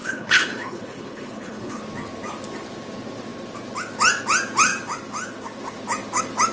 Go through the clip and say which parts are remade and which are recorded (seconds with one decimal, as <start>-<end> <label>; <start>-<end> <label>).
0.0-1.8 remade; 1.8-6.5 recorded